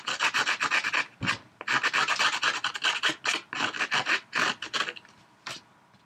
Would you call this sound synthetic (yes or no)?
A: no